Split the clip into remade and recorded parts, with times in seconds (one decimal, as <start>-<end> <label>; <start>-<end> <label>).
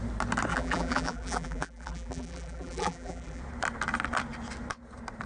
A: 0.0-0.5 recorded; 0.5-3.4 remade; 3.4-5.3 recorded